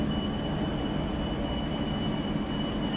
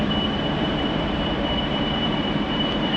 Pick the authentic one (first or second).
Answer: first